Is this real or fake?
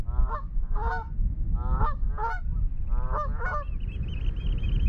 real